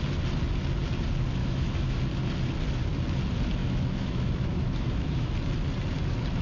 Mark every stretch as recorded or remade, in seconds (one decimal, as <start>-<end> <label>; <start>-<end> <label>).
0.0-1.4 recorded; 1.4-2.0 remade; 2.0-3.6 recorded; 3.6-5.3 remade; 5.3-6.4 recorded